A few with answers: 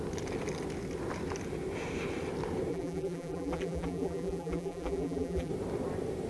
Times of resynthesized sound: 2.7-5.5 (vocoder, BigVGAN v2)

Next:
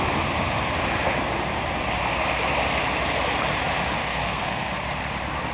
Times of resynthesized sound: 4.0-4.7 (codec, SNAC)

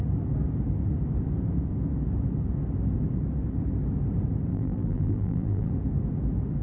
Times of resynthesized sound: 4.5-5.7 (vocoder, BigVGAN v2)